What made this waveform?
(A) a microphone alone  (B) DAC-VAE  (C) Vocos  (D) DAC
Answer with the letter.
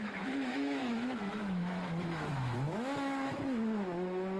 B